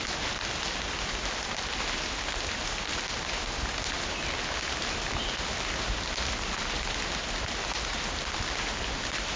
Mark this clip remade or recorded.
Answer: recorded